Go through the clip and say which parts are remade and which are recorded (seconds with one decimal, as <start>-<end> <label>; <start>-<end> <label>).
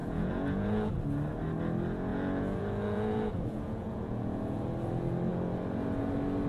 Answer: 0.0-0.9 remade; 0.9-2.1 recorded; 2.1-4.7 remade; 4.7-6.5 recorded